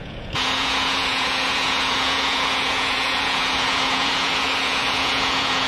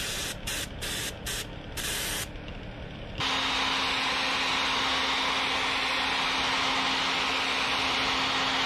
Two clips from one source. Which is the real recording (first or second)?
second